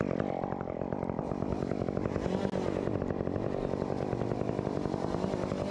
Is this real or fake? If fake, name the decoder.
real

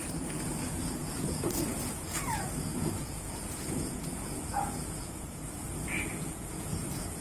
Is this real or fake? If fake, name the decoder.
fake, vocoder, Vocos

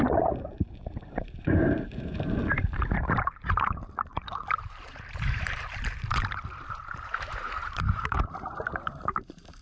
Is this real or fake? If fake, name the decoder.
fake, vocoder, BigVGAN v2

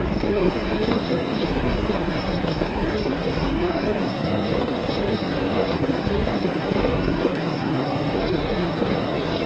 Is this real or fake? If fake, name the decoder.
fake, codec, SNAC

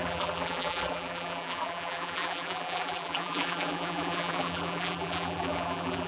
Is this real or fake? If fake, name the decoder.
fake, vocoder, BigVGAN v2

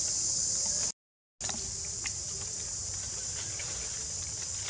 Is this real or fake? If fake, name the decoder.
real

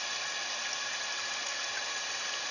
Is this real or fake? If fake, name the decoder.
real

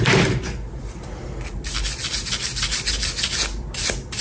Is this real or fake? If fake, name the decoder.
real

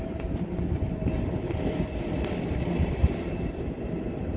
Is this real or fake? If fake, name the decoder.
real